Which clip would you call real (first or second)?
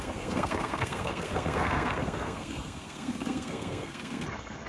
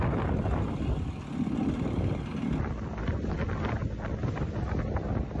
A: second